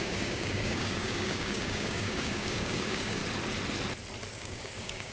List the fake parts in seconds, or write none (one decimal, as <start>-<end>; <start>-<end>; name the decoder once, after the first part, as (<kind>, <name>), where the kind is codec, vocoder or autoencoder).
0.0-3.2 (codec, DAC); 4.3-5.1